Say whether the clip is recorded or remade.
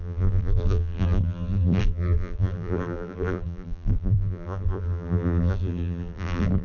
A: remade